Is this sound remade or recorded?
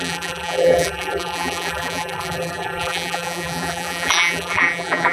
remade